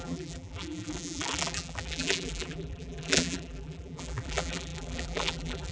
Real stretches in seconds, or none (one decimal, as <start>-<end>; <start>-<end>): none